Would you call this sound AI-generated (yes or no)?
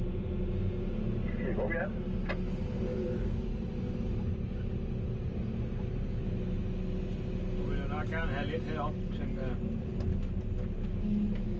no